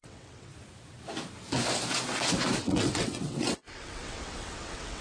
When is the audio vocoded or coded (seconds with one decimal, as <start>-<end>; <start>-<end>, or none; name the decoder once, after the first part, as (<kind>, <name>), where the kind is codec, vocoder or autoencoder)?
0.0-0.5 (vocoder, WaveNeXt); 2.6-5.0